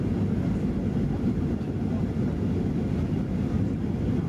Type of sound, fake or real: real